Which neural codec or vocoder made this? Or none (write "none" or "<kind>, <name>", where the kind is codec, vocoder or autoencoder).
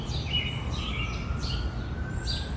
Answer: none